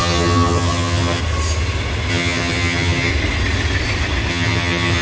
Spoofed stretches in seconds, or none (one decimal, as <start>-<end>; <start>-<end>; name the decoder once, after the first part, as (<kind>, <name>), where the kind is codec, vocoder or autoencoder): 0.0-1.2 (vocoder, HiFi-GAN); 2.1-3.1; 4.3-5.0